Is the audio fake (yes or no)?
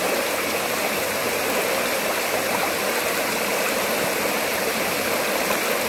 no